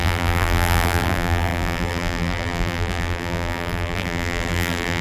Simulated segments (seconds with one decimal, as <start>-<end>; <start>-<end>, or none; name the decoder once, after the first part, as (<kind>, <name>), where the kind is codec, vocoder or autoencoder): 0.0-5.0 (vocoder, BigVGAN v2)